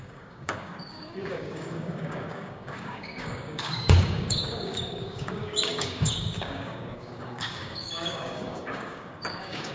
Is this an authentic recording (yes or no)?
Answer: no